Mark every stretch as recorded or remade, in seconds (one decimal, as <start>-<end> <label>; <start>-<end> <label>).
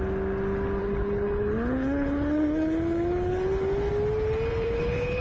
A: 0.0-0.8 recorded; 0.8-3.9 remade; 3.9-4.5 recorded; 4.5-5.2 remade